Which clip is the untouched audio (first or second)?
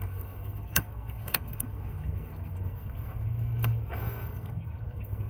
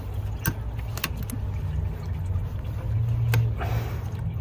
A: second